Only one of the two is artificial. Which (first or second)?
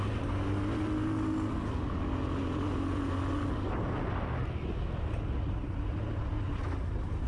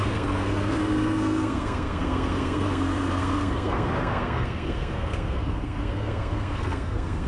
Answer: second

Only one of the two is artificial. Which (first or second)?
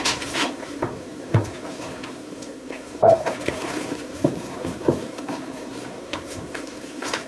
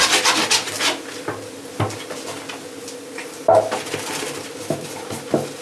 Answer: first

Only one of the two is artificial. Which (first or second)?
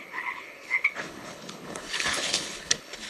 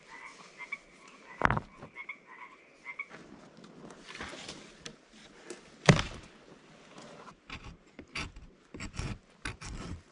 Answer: first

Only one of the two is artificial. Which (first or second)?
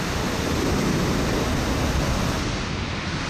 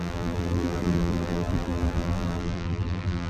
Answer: second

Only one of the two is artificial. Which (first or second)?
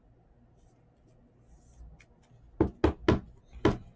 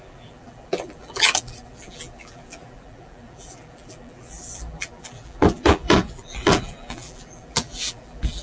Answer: second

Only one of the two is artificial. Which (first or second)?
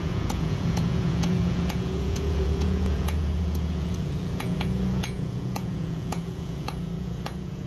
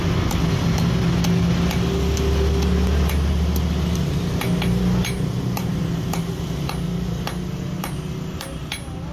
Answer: first